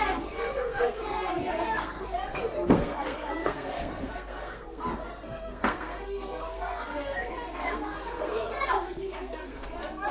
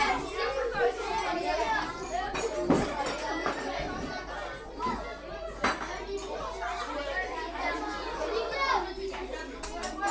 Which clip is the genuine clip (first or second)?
second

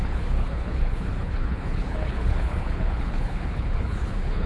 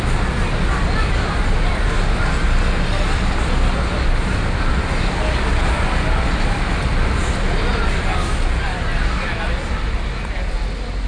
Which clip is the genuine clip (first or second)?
second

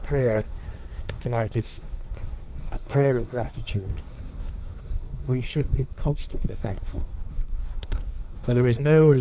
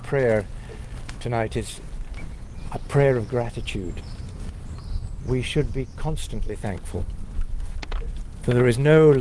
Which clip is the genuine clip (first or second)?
second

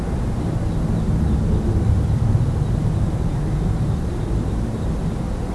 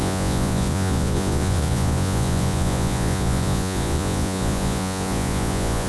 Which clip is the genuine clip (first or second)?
first